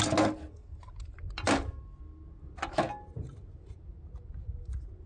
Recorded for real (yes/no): yes